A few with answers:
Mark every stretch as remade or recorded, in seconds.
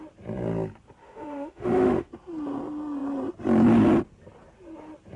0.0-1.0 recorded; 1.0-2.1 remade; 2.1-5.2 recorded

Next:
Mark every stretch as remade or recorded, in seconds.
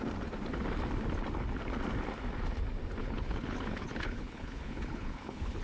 0.0-3.0 recorded; 3.0-5.6 remade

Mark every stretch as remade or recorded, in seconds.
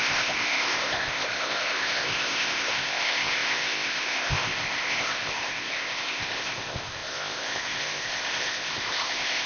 0.0-9.5 remade